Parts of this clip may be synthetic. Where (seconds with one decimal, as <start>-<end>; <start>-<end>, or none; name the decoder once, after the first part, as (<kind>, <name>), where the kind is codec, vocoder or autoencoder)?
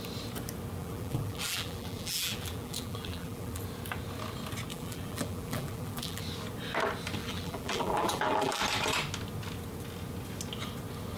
0.8-3.6 (vocoder, BigVGAN v2); 4.7-6.2; 7.2-8.6